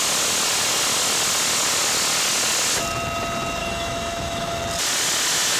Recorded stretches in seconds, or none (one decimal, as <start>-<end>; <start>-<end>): 0.0-3.6; 4.6-5.6